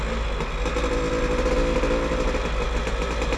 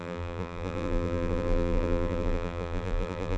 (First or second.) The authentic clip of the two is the first